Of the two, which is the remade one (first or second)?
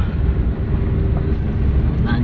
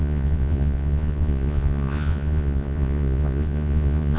second